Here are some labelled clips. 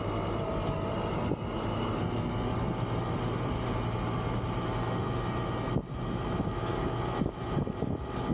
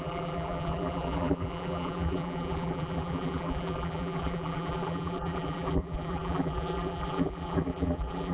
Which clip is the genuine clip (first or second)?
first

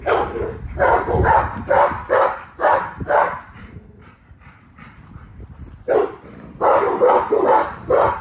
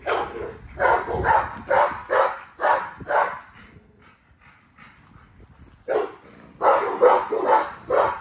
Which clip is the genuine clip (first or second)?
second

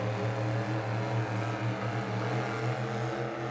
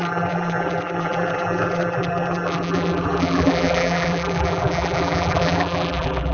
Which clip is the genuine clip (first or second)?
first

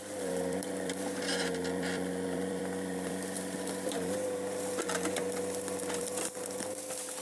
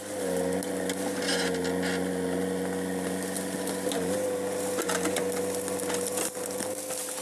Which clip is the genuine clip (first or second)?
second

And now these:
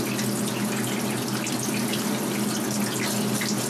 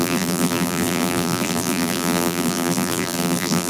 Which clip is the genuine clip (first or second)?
first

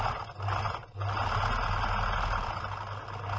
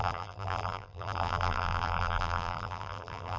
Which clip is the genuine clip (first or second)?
first